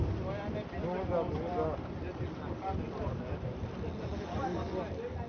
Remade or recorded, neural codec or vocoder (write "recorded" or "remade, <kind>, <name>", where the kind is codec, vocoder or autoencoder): recorded